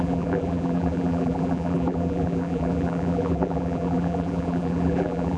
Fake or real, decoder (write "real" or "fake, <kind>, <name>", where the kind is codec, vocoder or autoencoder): fake, vocoder, BigVGAN v2